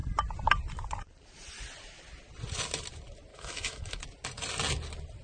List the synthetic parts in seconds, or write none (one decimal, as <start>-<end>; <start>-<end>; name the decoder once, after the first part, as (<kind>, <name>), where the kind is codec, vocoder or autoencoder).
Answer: 3.3-4.0 (autoencoder, DAC-VAE)